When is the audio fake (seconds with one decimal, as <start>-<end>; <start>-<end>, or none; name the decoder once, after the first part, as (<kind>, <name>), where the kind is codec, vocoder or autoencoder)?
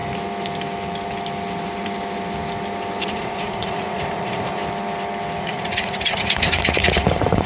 3.0-4.6 (vocoder, Vocos); 5.4-7.5